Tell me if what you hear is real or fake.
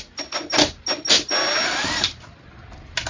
real